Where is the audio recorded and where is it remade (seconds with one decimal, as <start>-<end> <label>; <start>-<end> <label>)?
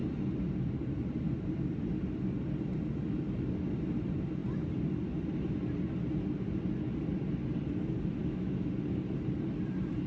0.0-8.2 recorded; 8.2-8.7 remade; 8.7-10.1 recorded